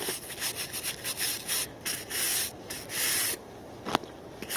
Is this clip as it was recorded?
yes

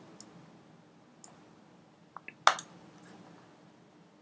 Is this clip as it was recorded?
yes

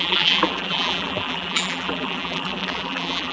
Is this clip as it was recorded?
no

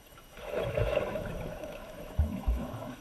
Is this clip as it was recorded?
no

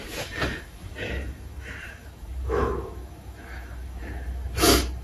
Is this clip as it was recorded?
no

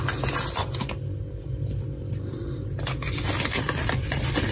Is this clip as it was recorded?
yes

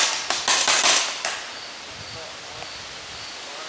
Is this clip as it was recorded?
yes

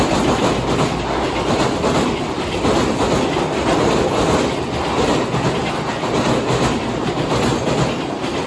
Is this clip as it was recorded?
yes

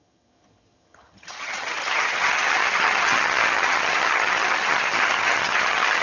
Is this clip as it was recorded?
no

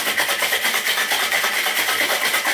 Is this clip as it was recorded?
yes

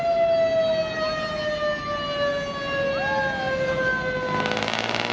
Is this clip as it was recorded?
yes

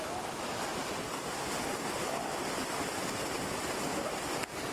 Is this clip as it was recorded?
yes